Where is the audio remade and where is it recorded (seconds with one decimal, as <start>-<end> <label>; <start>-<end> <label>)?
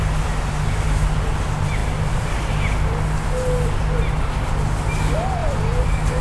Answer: 0.0-1.8 recorded; 1.8-2.5 remade; 2.5-5.4 recorded; 5.4-6.2 remade